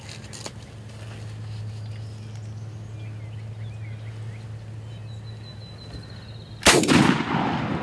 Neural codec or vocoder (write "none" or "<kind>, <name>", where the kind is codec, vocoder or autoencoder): none